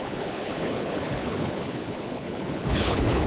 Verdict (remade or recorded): remade